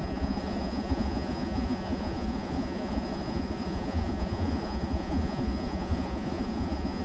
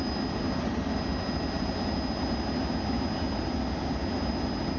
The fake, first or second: first